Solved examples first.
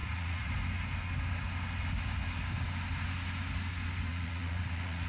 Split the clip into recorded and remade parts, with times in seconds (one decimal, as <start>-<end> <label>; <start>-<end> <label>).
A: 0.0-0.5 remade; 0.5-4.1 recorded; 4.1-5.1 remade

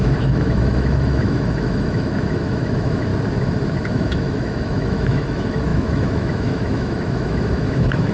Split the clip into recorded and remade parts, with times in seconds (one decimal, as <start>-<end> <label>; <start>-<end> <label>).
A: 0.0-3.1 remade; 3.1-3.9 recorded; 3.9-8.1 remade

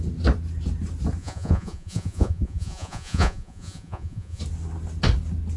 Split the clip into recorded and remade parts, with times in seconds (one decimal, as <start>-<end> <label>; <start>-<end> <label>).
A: 0.0-1.2 recorded; 1.2-4.4 remade; 4.4-5.6 recorded